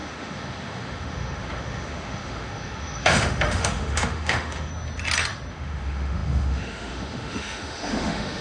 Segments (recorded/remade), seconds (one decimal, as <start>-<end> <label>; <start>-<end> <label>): 0.0-4.7 remade; 4.7-5.5 recorded; 5.5-8.4 remade